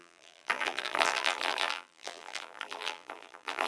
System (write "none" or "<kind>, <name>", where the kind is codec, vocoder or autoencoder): vocoder, BigVGAN v2